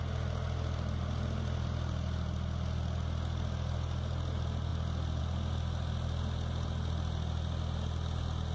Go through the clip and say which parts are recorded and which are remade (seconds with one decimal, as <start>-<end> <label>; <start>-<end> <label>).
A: 0.0-8.5 recorded